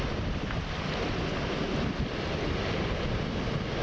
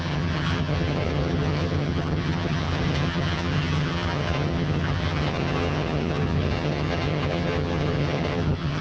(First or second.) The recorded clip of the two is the first